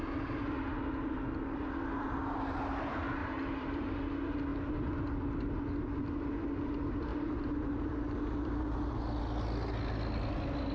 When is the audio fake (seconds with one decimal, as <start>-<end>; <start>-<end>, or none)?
3.2-3.9; 7.1-8.5